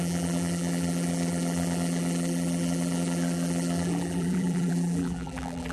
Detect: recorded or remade remade